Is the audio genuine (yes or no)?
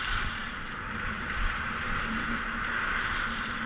no